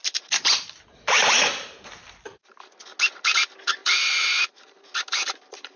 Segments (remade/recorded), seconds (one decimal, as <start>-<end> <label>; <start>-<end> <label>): 0.0-3.8 recorded; 3.8-5.8 remade